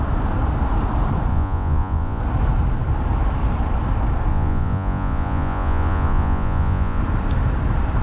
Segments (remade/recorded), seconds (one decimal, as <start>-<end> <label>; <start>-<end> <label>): 0.0-1.3 recorded; 1.3-2.2 remade; 2.2-4.3 recorded; 4.3-7.0 remade; 7.0-8.0 recorded